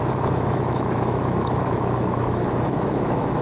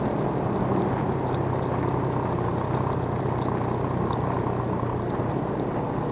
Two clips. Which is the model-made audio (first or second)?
first